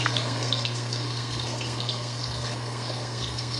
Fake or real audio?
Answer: fake